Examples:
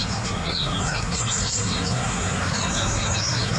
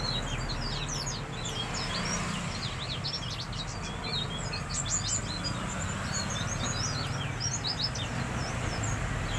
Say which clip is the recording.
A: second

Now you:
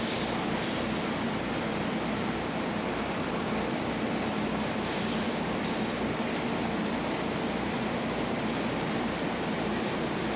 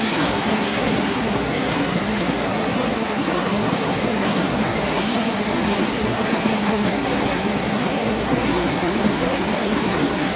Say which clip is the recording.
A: first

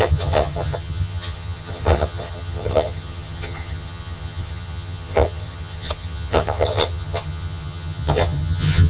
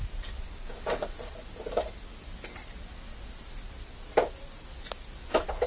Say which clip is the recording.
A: second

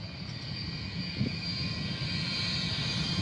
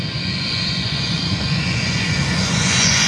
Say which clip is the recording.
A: first